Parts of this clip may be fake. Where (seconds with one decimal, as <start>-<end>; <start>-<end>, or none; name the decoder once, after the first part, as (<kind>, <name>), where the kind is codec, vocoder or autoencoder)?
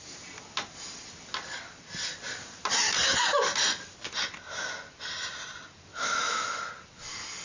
5.9-6.6 (autoencoder, DAC-VAE)